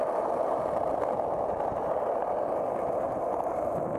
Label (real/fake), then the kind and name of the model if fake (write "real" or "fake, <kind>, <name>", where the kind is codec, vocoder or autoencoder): real